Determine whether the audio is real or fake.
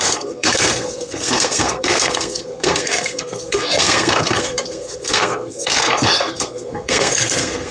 fake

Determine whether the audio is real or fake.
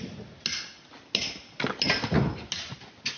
real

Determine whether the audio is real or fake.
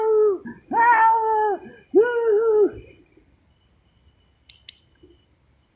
real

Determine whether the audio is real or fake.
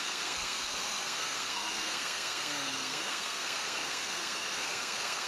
fake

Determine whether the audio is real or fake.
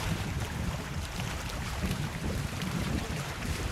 fake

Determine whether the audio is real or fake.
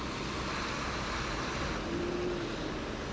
real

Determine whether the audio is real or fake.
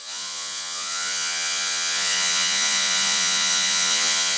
fake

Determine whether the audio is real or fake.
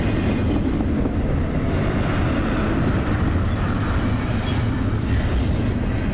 real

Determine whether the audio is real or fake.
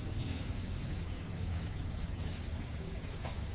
fake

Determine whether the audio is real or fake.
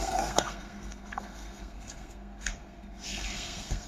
fake